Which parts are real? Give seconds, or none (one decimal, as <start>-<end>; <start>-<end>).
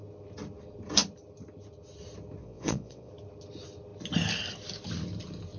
0.0-2.4; 3.1-5.6